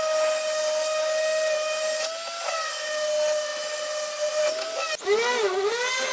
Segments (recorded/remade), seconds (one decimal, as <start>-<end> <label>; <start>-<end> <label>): 0.0-6.1 recorded